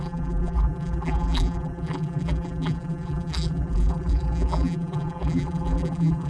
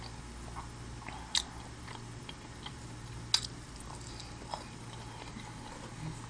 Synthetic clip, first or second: first